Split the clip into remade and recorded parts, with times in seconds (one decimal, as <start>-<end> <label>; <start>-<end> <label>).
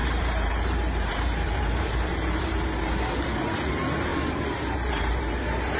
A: 0.0-3.5 remade; 3.5-4.1 recorded; 4.1-5.8 remade